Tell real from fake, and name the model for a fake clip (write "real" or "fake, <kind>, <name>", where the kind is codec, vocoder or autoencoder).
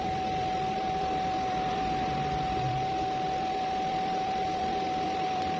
fake, vocoder, BigVGAN v2